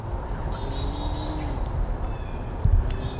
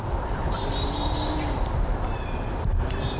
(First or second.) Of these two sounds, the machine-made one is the second